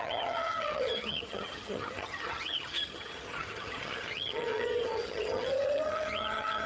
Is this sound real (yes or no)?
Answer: no